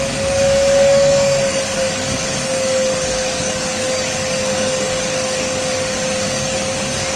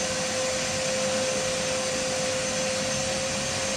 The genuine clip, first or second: second